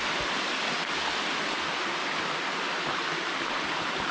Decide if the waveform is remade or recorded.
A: remade